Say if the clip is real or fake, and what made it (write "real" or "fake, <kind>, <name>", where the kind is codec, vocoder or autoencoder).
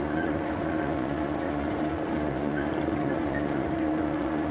fake, vocoder, Vocos